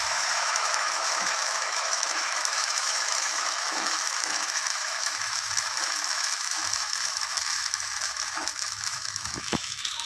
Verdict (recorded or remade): remade